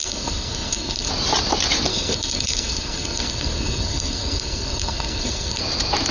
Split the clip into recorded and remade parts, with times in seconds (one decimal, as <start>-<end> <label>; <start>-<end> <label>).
0.0-1.1 remade; 1.1-1.9 recorded; 1.9-5.6 remade; 5.6-6.1 recorded